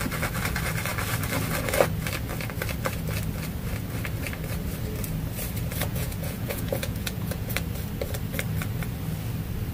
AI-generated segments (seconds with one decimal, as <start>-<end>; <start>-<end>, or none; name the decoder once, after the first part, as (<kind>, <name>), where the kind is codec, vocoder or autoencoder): 5.9-7.5 (vocoder, Vocos)

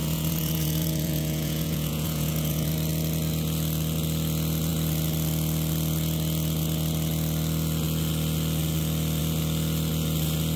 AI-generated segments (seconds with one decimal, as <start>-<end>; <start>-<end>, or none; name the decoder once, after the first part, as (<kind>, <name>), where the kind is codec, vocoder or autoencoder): 0.0-2.7 (vocoder, Vocos)

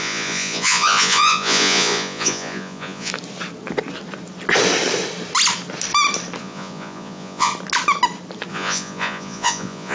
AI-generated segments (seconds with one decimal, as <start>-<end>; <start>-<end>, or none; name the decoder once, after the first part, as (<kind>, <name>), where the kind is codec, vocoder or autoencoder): 0.0-3.1 (vocoder, Vocos); 6.4-7.5; 8.5-9.9

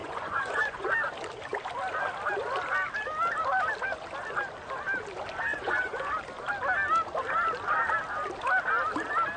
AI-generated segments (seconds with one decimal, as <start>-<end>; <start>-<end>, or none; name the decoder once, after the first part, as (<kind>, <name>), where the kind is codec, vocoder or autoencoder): 0.0-0.9 (vocoder, Vocos); 5.5-6.1

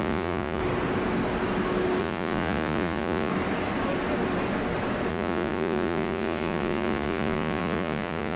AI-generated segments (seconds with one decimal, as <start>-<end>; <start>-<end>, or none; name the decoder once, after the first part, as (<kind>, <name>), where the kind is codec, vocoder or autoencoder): 0.0-0.6 (vocoder, Vocos); 2.0-3.3; 5.1-8.4

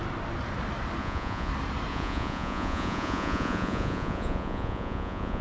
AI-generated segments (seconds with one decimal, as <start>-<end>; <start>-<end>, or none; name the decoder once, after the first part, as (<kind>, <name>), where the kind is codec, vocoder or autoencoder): 1.0-1.5 (vocoder, Vocos); 1.9-5.4